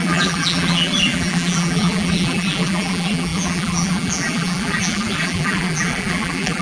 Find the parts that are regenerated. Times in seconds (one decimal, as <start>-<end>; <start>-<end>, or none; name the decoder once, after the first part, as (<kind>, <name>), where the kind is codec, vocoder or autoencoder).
0.0-6.6 (vocoder, BigVGAN v2)